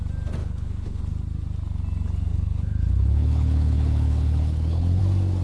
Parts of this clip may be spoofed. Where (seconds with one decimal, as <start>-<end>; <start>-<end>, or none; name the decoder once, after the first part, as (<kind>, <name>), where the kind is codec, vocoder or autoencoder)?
0.4-1.0 (codec, HILCodec); 2.3-5.0